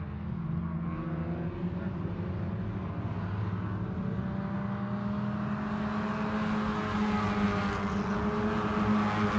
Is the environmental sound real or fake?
real